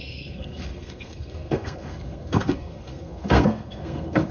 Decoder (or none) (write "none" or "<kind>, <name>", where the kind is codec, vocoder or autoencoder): codec, SNAC